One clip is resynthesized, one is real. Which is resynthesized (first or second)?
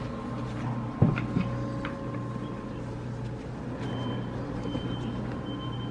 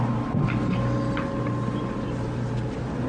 first